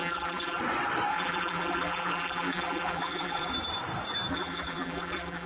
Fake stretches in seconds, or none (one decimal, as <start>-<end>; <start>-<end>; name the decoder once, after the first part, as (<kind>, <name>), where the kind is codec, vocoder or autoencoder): 0.0-0.6 (vocoder, BigVGAN v2); 1.1-3.5; 4.3-5.5